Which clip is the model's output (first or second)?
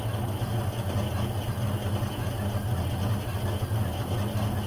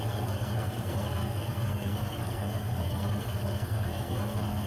second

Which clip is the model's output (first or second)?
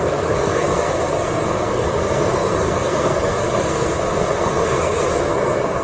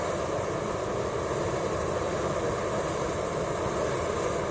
first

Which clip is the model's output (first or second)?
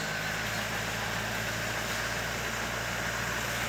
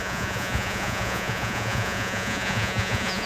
second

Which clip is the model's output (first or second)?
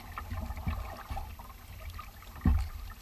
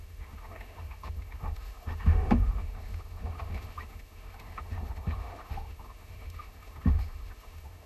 second